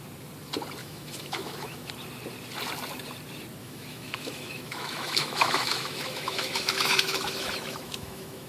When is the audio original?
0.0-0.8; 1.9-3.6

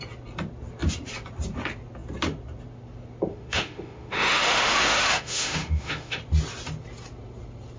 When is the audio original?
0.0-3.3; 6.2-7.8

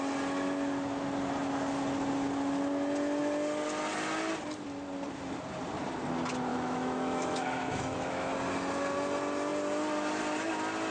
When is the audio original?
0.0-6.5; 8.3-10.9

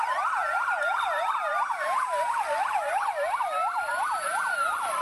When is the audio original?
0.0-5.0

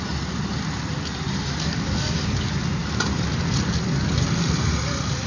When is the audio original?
0.0-5.3